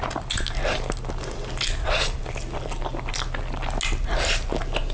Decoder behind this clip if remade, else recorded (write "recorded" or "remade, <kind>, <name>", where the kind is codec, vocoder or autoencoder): recorded